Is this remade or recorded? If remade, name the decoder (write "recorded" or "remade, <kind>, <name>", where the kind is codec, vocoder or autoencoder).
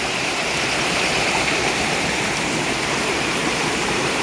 remade, vocoder, BigVGAN v2